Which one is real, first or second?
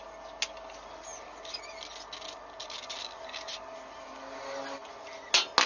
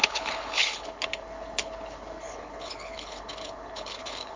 first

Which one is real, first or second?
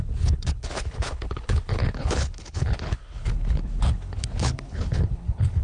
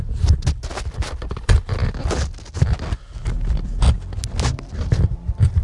second